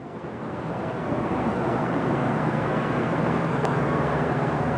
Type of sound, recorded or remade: remade